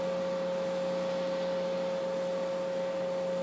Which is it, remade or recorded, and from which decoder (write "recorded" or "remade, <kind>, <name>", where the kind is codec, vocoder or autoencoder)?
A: recorded